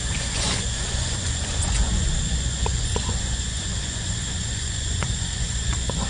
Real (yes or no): no